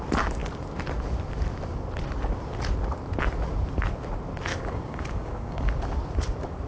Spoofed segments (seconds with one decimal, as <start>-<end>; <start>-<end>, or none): 4.5-5.7

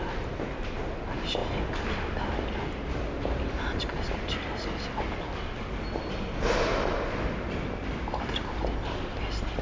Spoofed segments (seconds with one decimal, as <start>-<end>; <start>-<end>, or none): none

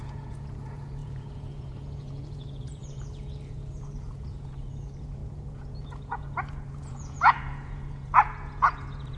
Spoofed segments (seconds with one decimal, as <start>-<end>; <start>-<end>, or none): 0.0-9.2

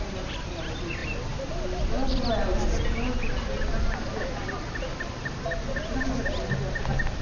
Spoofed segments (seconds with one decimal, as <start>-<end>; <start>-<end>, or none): none